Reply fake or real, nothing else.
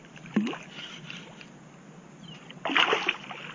real